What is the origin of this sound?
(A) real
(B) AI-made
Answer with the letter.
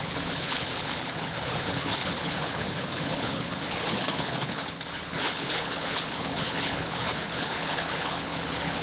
B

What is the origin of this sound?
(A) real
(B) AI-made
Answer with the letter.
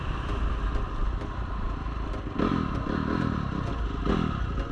A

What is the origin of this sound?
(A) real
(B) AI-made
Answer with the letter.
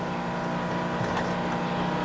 A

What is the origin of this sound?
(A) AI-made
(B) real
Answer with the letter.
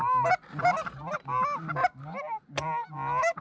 B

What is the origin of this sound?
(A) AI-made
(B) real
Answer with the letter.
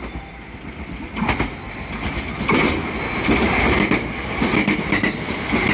B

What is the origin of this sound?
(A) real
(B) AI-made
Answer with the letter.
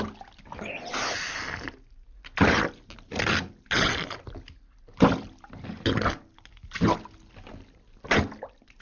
A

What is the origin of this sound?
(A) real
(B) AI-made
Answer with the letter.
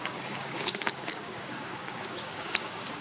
B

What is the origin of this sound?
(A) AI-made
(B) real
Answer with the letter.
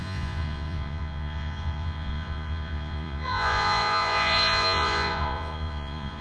A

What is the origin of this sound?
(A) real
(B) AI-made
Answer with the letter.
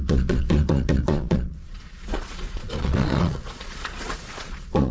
B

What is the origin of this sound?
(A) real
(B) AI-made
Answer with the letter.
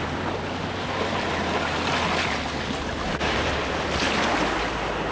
A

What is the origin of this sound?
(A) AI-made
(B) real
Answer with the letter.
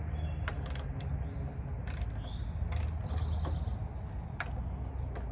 B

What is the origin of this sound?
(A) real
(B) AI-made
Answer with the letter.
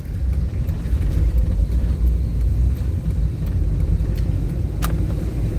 B